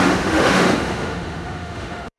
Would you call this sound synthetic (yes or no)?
yes